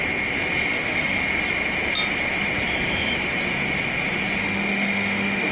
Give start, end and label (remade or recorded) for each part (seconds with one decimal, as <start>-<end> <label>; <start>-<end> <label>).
0.0-0.7 recorded; 0.7-1.2 remade; 1.2-4.4 recorded; 4.4-5.5 remade